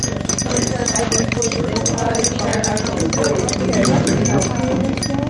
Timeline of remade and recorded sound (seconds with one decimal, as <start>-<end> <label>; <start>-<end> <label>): 0.0-0.8 recorded; 0.8-1.4 remade; 1.4-5.3 recorded